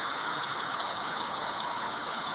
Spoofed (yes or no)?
yes